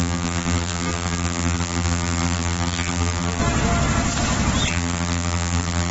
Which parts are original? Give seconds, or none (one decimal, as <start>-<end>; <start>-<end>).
3.4-4.7